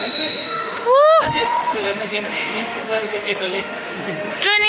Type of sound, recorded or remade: remade